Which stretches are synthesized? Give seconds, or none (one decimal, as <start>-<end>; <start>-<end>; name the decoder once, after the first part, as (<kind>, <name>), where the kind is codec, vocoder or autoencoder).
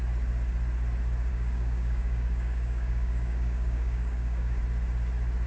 1.3-4.6 (codec, DAC)